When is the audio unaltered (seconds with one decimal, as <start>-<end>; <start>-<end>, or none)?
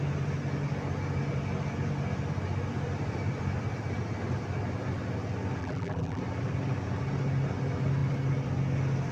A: 0.0-5.6; 6.2-9.1